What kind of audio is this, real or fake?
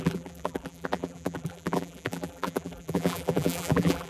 fake